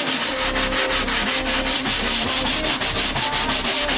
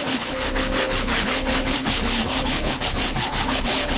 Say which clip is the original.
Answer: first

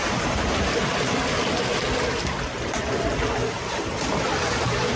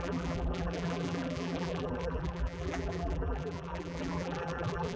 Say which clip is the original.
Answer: first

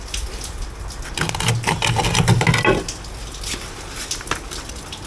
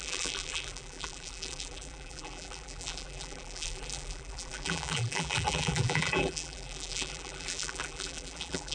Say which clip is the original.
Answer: first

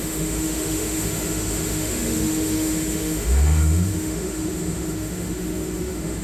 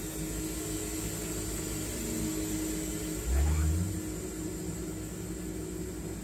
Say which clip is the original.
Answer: second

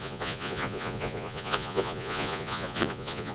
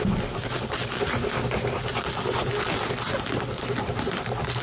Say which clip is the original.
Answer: second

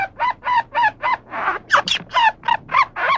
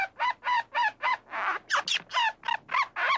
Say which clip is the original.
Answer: second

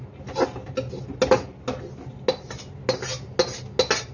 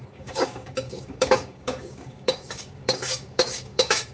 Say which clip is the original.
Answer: first